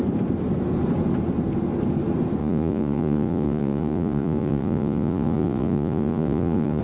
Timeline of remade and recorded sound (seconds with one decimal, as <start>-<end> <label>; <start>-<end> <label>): 0.0-2.4 recorded; 2.4-6.8 remade